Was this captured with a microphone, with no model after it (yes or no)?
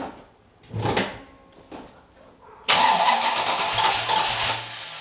yes